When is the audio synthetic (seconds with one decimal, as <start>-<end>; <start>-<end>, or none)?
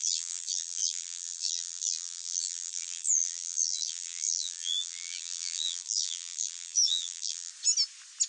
0.0-7.5